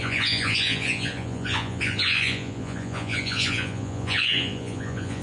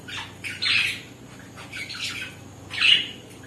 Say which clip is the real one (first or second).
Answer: second